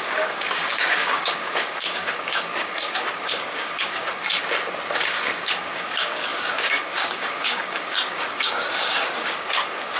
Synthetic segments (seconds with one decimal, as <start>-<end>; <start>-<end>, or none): 0.0-4.3; 4.9-10.0